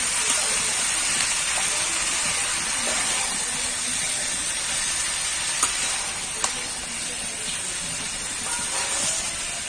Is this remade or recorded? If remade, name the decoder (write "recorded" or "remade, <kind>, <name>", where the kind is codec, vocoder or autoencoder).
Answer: recorded